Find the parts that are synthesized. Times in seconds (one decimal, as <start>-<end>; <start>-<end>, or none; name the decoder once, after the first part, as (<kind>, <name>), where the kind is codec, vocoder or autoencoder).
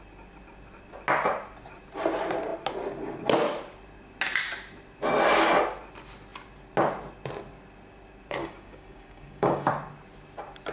8.4-9.7 (codec, DAC)